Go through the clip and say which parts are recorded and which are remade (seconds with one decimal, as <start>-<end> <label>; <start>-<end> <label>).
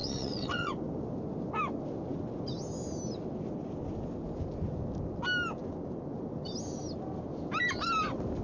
0.0-0.7 remade; 0.7-8.4 recorded